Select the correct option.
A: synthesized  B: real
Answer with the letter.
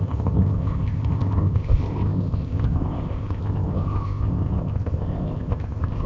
A